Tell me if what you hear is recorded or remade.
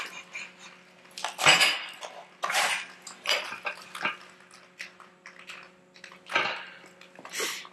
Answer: recorded